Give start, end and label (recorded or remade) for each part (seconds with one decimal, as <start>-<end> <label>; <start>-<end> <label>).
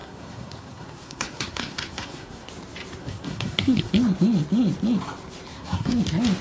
0.0-2.5 remade; 2.5-3.0 recorded; 3.0-3.9 remade; 3.9-5.5 recorded; 5.5-6.0 remade; 6.0-6.4 recorded